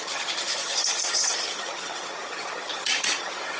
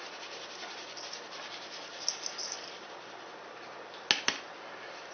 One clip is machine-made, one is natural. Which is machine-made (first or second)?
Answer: first